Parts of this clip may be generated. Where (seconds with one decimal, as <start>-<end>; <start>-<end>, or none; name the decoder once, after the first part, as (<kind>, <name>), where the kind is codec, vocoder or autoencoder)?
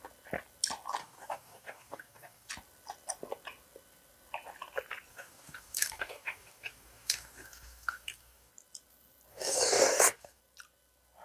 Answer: 1.0-2.5 (codec, DAC); 5.1-8.5; 9.3-10.4